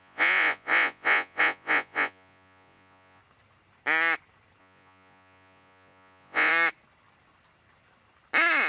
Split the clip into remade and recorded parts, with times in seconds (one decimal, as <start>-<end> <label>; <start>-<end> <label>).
0.0-3.2 remade; 3.2-4.6 recorded; 4.6-6.5 remade; 6.5-8.7 recorded